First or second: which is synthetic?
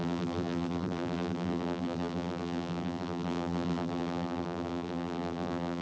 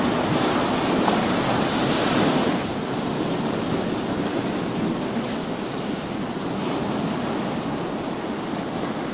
first